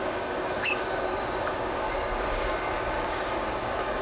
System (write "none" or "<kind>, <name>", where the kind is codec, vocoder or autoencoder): codec, DAC